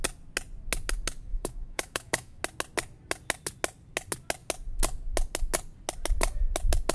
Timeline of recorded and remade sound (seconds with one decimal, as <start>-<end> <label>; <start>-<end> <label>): 0.0-1.3 recorded; 1.3-2.4 remade; 2.4-6.9 recorded